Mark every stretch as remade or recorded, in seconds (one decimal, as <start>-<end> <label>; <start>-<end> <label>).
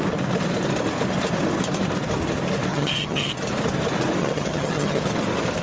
0.0-2.7 recorded; 2.7-3.3 remade; 3.3-4.2 recorded; 4.2-5.0 remade; 5.0-5.6 recorded